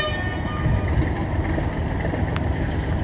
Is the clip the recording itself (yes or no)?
yes